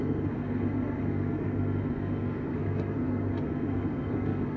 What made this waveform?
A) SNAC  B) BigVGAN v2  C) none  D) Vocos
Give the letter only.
A